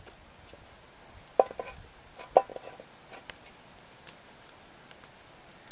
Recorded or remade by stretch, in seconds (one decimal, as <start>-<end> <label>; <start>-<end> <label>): 0.0-5.7 recorded